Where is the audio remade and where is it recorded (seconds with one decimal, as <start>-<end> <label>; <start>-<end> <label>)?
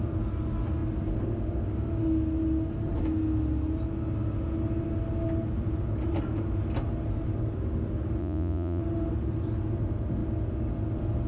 0.0-8.2 recorded; 8.2-8.8 remade; 8.8-11.3 recorded